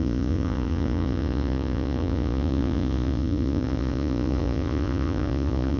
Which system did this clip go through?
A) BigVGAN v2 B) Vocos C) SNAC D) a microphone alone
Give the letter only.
B